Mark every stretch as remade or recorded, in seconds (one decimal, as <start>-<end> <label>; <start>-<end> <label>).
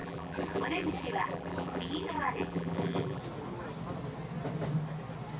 0.0-3.2 remade; 3.2-5.4 recorded